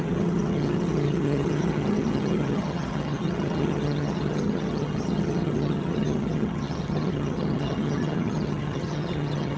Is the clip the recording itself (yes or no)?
no